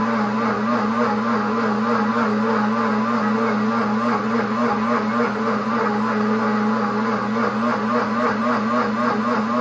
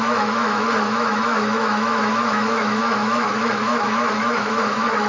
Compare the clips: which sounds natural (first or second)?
first